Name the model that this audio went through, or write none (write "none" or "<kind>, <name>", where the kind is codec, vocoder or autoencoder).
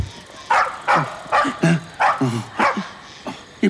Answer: none